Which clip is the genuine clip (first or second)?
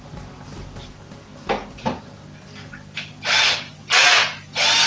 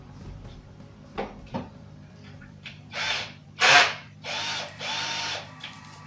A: first